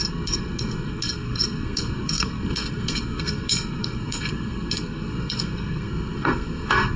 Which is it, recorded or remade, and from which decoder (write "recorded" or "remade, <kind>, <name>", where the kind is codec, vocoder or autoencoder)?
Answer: remade, codec, SNAC